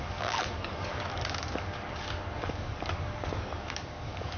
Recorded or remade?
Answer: remade